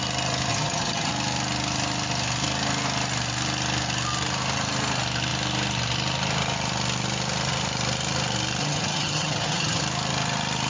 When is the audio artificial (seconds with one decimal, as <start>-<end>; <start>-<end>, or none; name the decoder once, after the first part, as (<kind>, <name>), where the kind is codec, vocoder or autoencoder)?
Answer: 0.5-1.1 (vocoder, HiFi-GAN); 8.6-9.8